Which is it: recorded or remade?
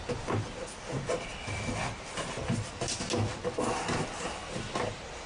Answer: recorded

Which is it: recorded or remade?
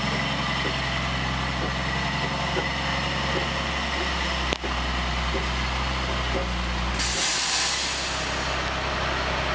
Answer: recorded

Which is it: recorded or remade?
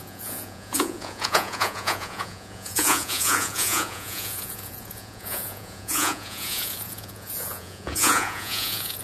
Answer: remade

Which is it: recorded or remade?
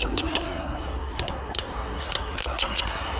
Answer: remade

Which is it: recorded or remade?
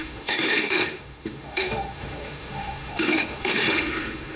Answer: remade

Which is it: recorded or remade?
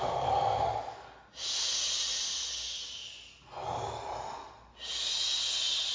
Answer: recorded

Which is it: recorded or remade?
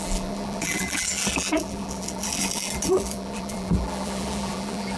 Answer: remade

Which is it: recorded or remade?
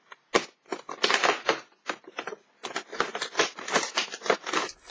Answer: recorded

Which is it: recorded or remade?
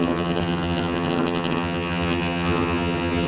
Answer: remade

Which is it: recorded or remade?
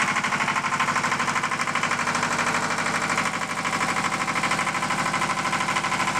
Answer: recorded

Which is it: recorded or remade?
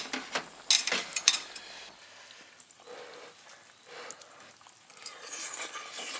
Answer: recorded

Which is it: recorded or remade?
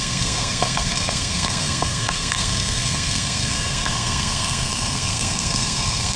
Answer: remade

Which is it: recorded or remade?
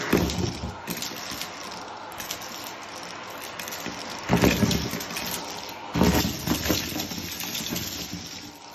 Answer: recorded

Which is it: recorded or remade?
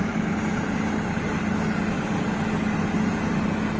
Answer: recorded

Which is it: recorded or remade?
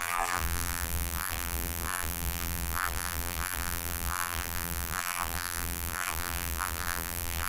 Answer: remade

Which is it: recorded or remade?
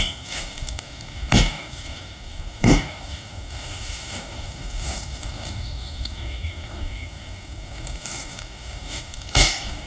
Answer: remade